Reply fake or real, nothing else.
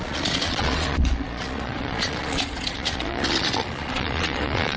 fake